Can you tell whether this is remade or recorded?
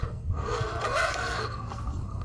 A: remade